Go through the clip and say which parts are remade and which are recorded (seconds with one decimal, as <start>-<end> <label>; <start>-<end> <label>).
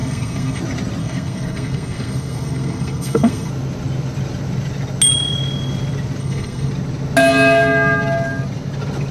0.0-0.6 remade; 0.6-1.0 recorded; 1.0-3.5 remade; 3.5-6.2 recorded; 6.2-6.7 remade; 6.7-9.1 recorded